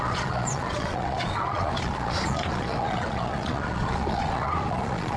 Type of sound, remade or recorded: remade